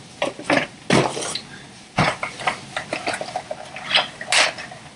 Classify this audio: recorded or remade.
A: recorded